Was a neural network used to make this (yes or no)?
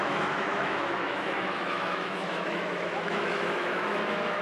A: yes